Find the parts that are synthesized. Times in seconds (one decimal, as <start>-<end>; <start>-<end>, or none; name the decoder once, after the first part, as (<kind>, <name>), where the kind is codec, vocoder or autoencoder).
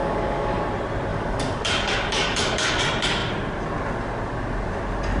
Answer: 0.0-0.6 (codec, DAC); 1.1-2.8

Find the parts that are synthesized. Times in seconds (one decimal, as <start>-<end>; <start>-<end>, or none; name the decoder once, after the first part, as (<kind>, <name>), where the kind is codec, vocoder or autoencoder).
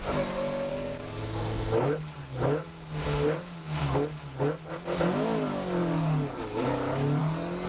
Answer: 0.7-1.4 (codec, DAC); 5.8-7.2